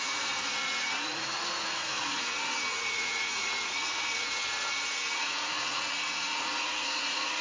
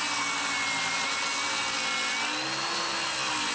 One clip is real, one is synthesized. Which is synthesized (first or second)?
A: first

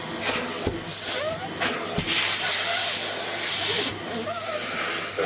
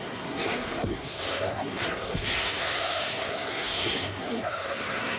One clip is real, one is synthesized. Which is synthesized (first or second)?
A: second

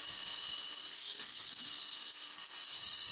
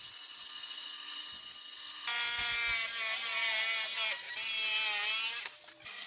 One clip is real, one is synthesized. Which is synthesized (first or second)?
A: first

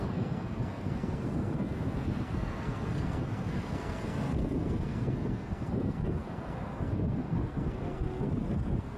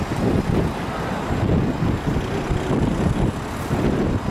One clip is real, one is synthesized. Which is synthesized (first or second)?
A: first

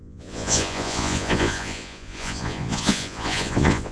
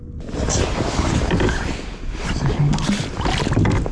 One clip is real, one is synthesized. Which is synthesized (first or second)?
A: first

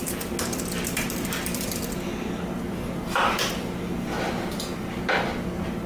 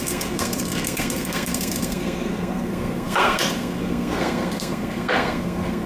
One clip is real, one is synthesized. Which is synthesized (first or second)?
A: second